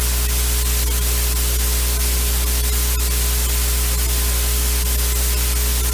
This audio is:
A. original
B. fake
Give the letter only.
A